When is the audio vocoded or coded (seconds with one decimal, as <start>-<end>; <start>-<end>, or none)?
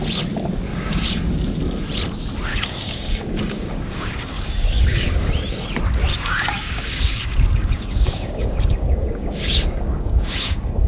0.7-1.2; 2.5-5.3; 6.1-10.9